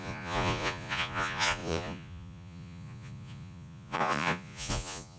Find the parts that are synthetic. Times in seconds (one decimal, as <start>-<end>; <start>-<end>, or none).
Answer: 0.0-5.2